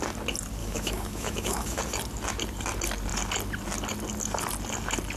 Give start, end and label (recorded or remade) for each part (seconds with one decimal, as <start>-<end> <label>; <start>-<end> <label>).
0.0-0.6 recorded; 0.6-1.8 remade; 1.8-5.2 recorded